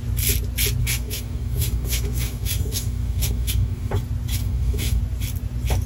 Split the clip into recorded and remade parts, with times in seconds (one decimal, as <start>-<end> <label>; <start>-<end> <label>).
0.0-0.8 recorded; 0.8-3.9 remade; 3.9-4.4 recorded; 4.4-5.0 remade; 5.0-5.9 recorded